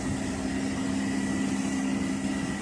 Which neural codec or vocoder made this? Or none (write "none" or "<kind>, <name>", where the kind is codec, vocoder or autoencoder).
none